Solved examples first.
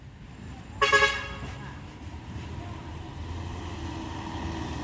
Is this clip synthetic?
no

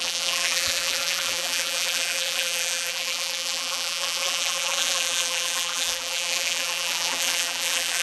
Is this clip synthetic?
yes